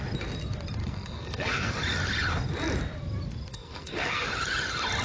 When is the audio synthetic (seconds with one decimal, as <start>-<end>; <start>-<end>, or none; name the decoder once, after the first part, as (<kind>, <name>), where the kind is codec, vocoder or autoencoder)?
0.8-1.7 (codec, SNAC); 3.5-4.3